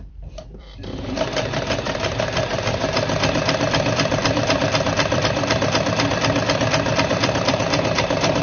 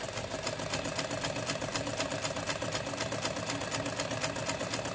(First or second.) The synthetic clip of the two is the first